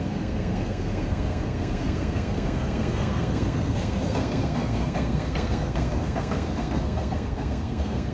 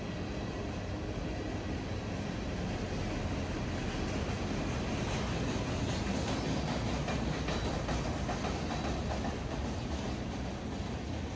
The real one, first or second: second